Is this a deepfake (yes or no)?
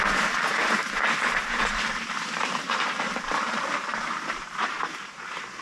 yes